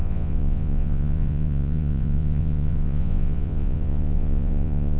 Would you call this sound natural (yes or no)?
no